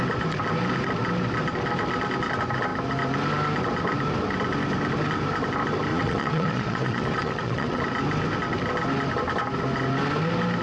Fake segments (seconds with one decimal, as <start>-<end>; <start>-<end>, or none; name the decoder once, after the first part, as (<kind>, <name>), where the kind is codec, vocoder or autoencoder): 5.9-7.8 (vocoder, Vocos)